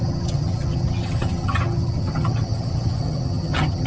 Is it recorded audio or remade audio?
remade